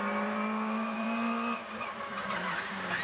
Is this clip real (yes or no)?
no